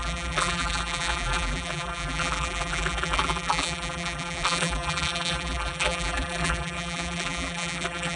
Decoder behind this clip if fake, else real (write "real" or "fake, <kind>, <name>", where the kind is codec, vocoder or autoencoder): fake, vocoder, BigVGAN v2